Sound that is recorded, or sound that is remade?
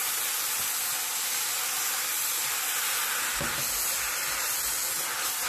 recorded